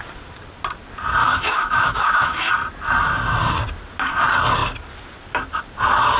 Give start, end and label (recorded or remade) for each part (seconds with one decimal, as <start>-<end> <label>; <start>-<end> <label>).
0.0-1.2 recorded; 1.2-2.5 remade; 2.5-6.2 recorded